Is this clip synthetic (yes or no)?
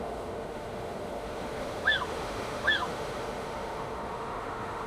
yes